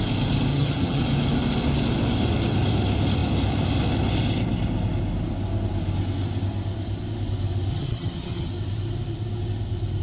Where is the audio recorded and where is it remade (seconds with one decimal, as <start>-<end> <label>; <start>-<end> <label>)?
0.0-0.5 recorded; 0.5-1.0 remade; 1.0-7.7 recorded; 7.7-8.5 remade; 8.5-10.0 recorded